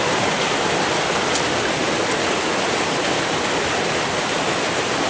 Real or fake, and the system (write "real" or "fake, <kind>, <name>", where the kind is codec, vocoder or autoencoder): real